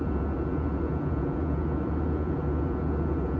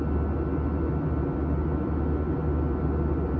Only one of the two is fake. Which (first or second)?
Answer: first